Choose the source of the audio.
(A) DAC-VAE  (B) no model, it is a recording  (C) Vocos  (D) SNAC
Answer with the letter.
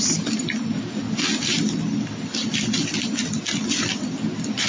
B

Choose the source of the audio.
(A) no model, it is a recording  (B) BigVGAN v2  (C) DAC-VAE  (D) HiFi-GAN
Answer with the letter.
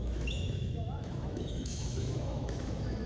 C